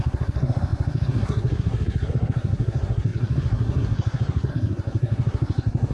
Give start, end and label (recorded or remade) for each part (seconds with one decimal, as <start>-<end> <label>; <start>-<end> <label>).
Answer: 0.0-5.9 remade